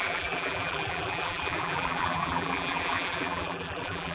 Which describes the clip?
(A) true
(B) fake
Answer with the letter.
B